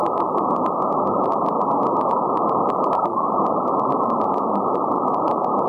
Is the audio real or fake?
fake